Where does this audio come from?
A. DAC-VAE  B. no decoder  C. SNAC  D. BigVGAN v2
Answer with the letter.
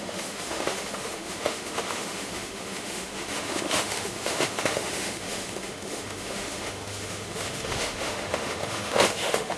A